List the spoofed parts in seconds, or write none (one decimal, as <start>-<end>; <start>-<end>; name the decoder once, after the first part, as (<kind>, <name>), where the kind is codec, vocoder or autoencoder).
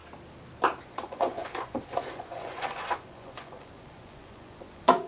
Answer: 0.8-5.1 (vocoder, Vocos)